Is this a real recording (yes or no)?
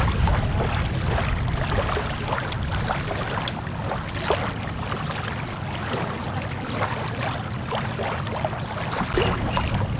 yes